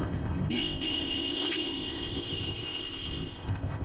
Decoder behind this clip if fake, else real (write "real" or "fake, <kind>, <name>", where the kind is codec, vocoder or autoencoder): fake, codec, ZipCodec